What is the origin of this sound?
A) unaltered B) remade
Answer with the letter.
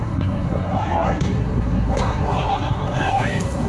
B